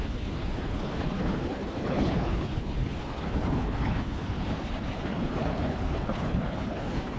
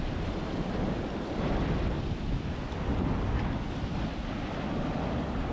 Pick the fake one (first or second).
first